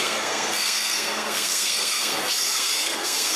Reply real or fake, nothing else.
fake